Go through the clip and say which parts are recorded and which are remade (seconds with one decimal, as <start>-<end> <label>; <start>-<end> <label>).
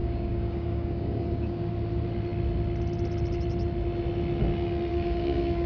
0.0-1.7 remade; 1.7-4.9 recorded; 4.9-5.7 remade